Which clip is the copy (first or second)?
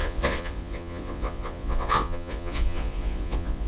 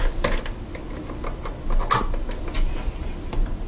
first